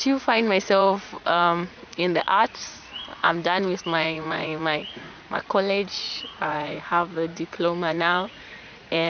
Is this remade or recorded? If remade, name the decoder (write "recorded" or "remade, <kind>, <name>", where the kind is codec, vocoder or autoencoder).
remade, vocoder, Vocos